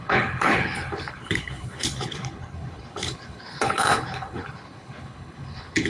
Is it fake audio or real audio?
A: fake